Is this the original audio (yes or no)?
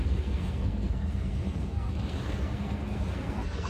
no